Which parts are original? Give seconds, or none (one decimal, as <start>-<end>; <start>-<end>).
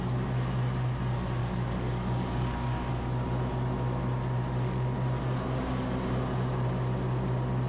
0.0-1.4; 2.9-7.7